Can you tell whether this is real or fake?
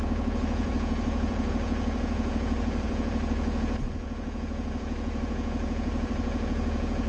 fake